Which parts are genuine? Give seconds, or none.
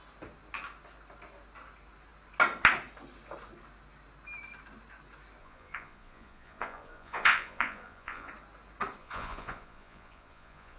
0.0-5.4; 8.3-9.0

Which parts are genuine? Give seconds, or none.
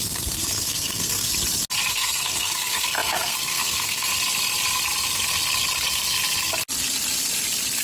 1.3-1.9; 4.1-7.8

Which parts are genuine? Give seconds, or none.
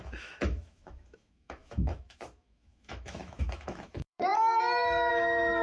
none